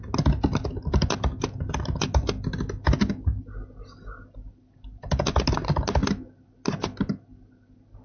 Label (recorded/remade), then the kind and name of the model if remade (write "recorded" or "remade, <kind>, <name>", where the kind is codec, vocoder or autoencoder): recorded